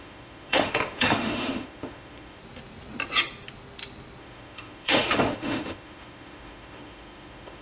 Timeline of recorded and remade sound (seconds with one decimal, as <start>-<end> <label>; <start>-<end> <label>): 0.0-2.4 remade; 2.4-4.2 recorded; 4.2-7.6 remade